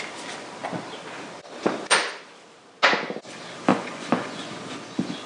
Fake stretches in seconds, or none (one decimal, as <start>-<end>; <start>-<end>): 3.7-5.3